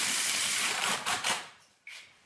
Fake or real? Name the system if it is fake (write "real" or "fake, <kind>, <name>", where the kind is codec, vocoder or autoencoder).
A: fake, vocoder, BigVGAN v2